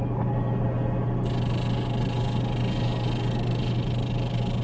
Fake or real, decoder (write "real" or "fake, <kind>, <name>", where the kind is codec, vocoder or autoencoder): real